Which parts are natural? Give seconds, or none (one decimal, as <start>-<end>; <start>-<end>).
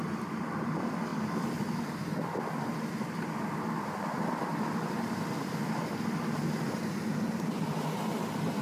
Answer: 0.0-8.6